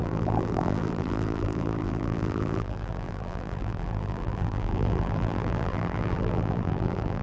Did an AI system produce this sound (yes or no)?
yes